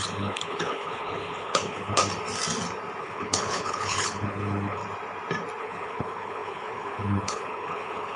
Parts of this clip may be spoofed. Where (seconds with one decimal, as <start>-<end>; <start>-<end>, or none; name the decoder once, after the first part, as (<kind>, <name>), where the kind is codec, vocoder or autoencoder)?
0.0-2.0 (codec, HILCodec); 3.0-4.8; 5.6-8.2